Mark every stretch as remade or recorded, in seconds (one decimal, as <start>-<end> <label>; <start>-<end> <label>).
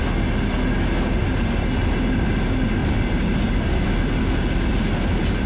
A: 0.0-2.8 recorded; 2.8-4.1 remade; 4.1-5.5 recorded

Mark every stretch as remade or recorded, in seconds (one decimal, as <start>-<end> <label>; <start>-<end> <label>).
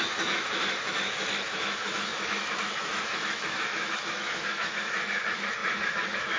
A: 0.0-6.4 remade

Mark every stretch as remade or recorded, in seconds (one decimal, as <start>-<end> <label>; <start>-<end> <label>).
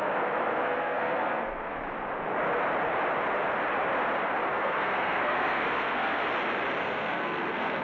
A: 0.0-1.8 remade; 1.8-4.5 recorded; 4.5-6.2 remade; 6.2-6.8 recorded; 6.8-7.8 remade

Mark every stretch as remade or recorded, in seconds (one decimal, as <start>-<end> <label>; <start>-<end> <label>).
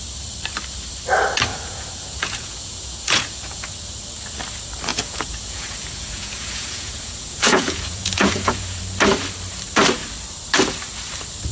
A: 0.0-1.5 recorded; 1.5-3.7 remade; 3.7-4.9 recorded; 4.9-8.8 remade; 8.8-11.5 recorded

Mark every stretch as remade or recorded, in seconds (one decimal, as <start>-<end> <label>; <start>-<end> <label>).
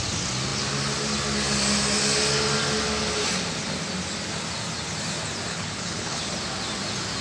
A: 0.0-5.5 recorded; 5.5-6.3 remade; 6.3-7.2 recorded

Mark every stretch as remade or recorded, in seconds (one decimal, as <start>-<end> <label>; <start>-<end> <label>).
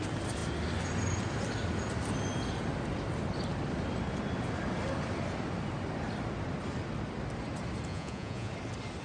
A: 0.0-7.9 recorded; 7.9-8.5 remade; 8.5-9.0 recorded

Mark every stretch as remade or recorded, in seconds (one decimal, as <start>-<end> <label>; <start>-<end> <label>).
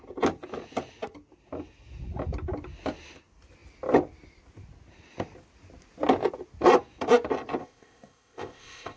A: 0.0-7.6 recorded; 7.6-9.0 remade